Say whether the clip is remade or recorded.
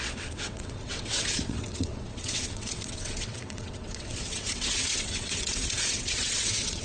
remade